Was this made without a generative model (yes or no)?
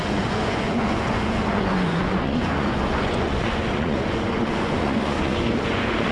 no